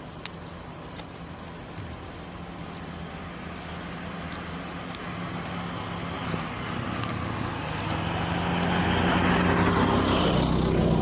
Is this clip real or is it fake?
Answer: real